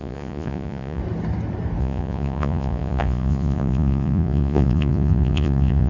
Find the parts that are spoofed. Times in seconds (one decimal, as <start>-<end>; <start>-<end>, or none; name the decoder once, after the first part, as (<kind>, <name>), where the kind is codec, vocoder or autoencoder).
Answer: 0.0-1.0 (vocoder, Vocos); 1.8-5.9